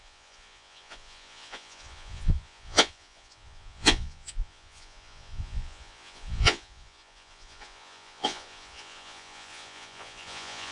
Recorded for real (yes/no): no